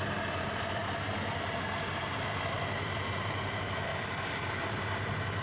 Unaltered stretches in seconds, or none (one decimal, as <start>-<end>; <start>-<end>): 0.0-3.9; 4.4-5.4